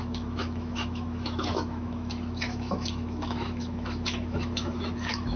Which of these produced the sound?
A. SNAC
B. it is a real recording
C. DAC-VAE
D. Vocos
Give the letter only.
C